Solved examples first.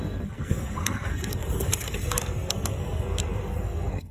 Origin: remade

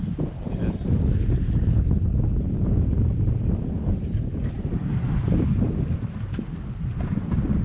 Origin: recorded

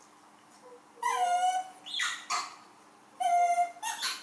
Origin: recorded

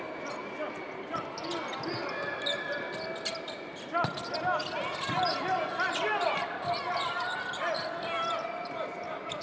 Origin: recorded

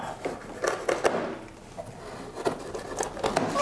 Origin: recorded